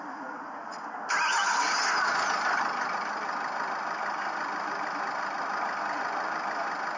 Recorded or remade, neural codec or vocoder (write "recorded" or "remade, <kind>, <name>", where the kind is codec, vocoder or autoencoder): recorded